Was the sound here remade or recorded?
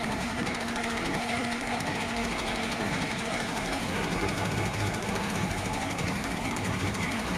remade